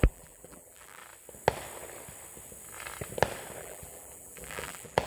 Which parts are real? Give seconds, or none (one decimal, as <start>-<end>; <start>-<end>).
1.0-3.6

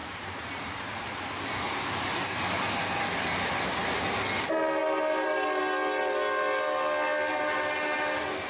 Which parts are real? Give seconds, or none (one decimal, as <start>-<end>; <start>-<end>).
1.9-4.8; 5.6-8.5

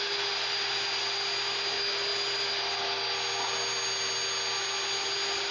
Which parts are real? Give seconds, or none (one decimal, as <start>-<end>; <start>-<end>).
0.0-5.5

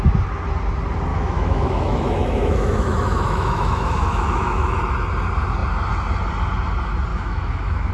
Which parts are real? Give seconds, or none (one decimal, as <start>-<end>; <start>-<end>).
0.0-1.1; 4.8-7.1